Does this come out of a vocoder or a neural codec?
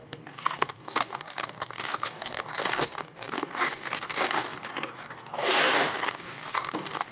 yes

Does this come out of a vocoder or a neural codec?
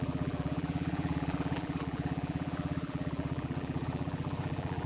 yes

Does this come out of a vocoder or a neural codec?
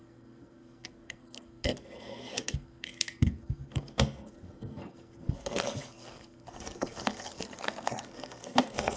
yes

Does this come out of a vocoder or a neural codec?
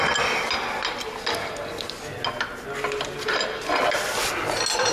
no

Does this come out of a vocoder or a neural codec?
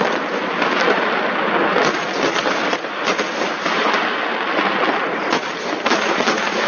no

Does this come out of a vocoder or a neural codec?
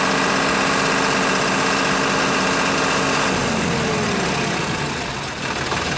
no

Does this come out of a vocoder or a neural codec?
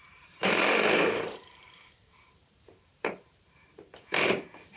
yes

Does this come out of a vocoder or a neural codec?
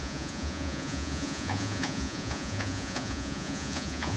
yes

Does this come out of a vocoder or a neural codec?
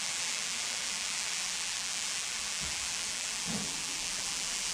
yes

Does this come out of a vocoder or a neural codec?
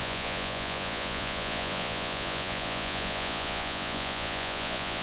yes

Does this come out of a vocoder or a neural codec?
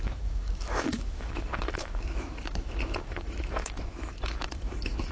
yes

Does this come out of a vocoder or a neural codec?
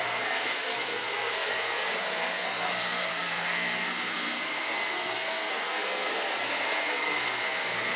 yes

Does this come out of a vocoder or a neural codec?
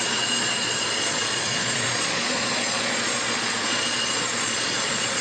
yes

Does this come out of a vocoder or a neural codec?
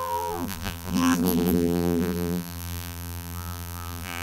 yes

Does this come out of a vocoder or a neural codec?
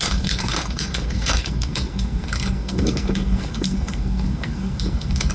yes